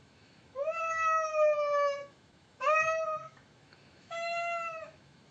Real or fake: fake